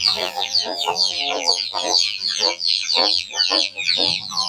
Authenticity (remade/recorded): remade